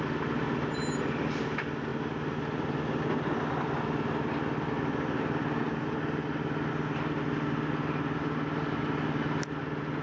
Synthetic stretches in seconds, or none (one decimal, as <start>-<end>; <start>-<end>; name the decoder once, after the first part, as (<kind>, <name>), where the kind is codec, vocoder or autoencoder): none

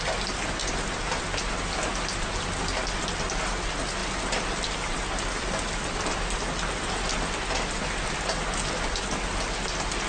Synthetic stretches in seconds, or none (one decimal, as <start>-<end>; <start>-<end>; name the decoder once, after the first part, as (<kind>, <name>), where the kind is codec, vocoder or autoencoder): none